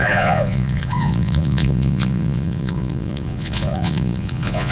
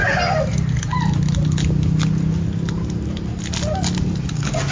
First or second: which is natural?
second